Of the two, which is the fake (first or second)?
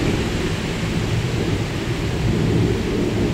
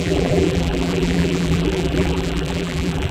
second